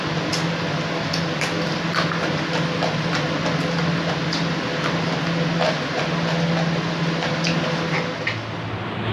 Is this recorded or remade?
recorded